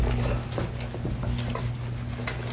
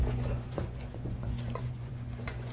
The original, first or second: first